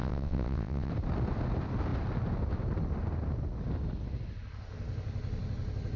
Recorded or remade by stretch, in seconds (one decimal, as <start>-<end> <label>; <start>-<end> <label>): 0.0-0.9 remade; 0.9-6.0 recorded